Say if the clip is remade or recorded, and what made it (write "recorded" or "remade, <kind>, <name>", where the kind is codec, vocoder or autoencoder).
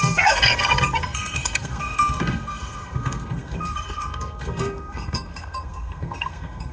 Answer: remade, codec, SNAC